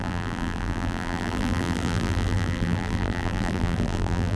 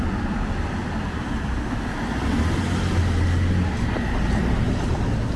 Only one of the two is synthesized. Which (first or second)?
first